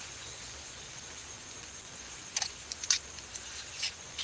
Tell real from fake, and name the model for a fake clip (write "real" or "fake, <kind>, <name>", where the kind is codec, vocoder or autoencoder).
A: fake, vocoder, Vocos